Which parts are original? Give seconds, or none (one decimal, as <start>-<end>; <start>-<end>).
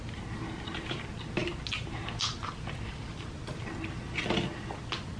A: 0.0-5.2